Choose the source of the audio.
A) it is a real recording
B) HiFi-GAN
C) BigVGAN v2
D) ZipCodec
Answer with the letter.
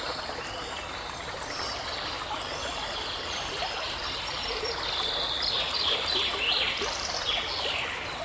A